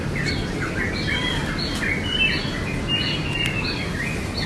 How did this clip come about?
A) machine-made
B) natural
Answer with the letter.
B